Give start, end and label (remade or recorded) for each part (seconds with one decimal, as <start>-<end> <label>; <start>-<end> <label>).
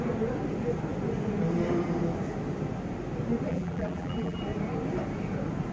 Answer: 0.0-3.5 recorded; 3.5-4.4 remade; 4.4-5.7 recorded